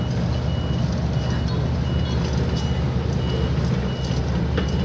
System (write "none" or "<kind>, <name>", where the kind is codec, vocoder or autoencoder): none